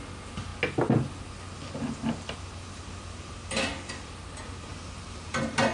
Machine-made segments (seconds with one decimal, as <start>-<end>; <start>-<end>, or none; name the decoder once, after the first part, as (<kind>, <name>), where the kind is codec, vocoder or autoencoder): 4.7-5.7 (vocoder, BigVGAN v2)